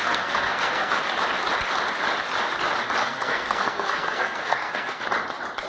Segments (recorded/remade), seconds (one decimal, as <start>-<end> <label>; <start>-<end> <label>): 0.0-1.0 remade; 1.0-3.0 recorded; 3.0-5.0 remade; 5.0-5.7 recorded